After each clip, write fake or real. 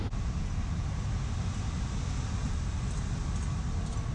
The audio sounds real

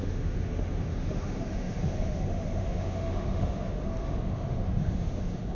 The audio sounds fake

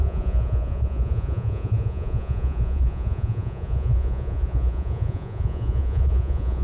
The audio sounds fake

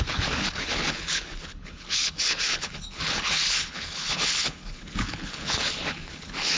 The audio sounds fake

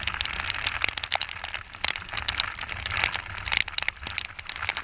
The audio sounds real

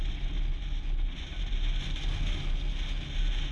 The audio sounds real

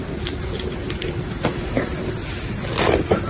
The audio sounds fake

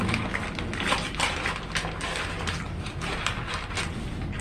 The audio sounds real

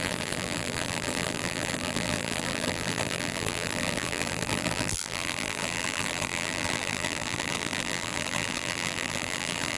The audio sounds fake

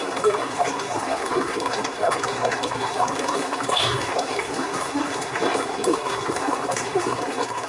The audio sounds fake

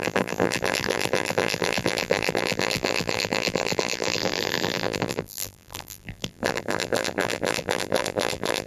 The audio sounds fake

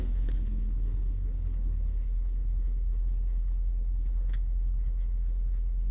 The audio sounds fake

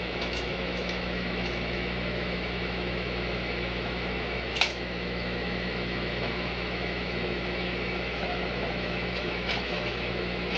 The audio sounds fake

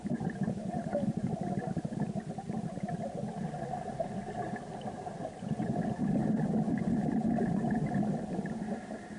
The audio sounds real